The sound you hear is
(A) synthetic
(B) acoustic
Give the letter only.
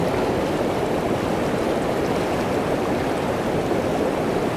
B